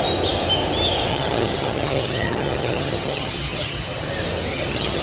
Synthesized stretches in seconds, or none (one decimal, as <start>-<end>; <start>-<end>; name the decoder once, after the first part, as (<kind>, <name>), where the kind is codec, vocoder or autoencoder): 1.1-4.1 (vocoder, HiFi-GAN); 4.5-5.0